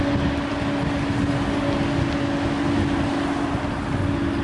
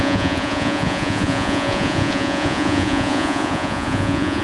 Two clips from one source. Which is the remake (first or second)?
second